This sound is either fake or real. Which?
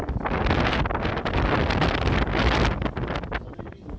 real